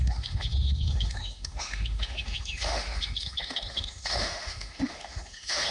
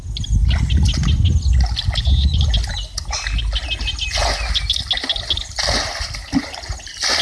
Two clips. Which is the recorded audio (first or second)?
second